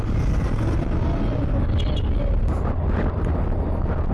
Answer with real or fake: real